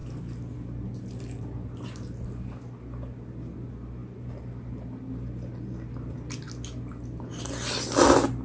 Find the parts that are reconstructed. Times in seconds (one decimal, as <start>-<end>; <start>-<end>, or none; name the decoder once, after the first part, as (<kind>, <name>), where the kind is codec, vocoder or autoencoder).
none